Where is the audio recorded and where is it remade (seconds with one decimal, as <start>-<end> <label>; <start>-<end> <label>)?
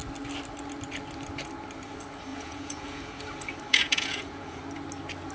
0.0-2.3 recorded; 2.3-3.2 remade; 3.2-3.7 recorded; 3.7-4.6 remade; 4.6-5.3 recorded